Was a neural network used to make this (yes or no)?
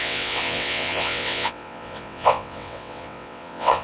yes